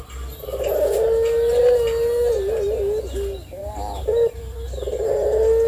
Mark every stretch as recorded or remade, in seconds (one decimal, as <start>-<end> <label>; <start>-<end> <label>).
0.0-3.6 recorded; 3.6-4.4 remade; 4.4-5.7 recorded